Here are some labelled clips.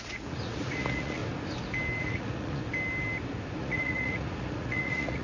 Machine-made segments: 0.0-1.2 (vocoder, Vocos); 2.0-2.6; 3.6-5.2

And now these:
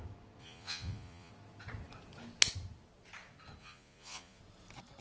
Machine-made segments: 0.4-1.3 (vocoder, Vocos); 3.6-4.4

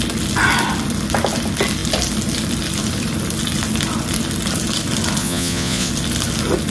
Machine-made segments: 5.2-5.9 (vocoder, Vocos)

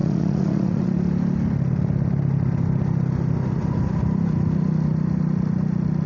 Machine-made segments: 0.0-0.9 (vocoder, Vocos)

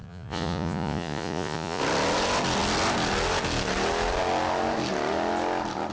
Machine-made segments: 0.0-1.8 (vocoder, Vocos)

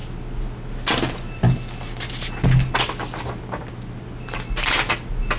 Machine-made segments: none